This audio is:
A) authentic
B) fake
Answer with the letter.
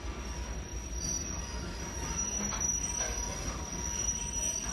A